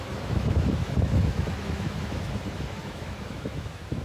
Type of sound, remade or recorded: remade